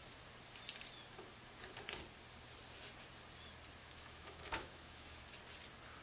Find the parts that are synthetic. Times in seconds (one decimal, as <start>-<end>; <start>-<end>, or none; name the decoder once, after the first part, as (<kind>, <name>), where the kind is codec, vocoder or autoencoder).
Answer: 3.8-5.2 (autoencoder, DAC-VAE)